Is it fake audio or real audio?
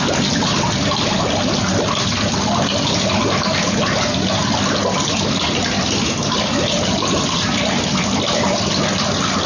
real